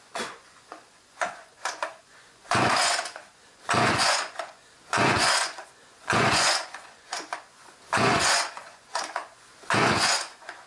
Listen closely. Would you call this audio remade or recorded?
remade